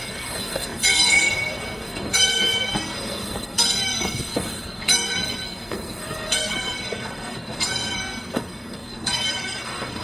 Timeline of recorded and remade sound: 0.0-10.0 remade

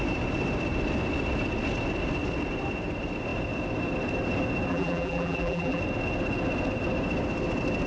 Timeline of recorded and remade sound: 0.0-4.7 recorded; 4.7-5.8 remade; 5.8-7.9 recorded

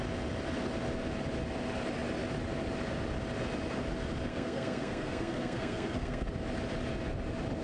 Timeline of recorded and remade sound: 0.0-4.3 recorded; 4.3-6.3 remade; 6.3-7.6 recorded